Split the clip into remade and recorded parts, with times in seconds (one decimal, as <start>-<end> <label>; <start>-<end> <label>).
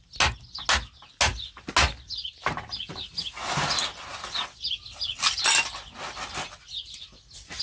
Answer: 0.0-7.6 recorded